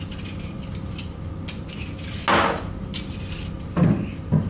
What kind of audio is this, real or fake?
real